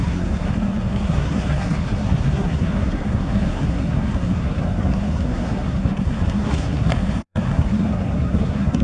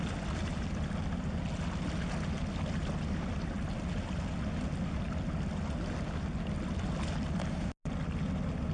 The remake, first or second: first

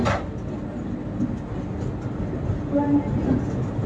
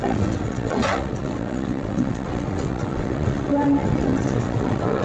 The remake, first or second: second